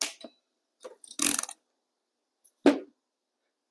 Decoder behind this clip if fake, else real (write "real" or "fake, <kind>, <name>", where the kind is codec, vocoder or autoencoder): real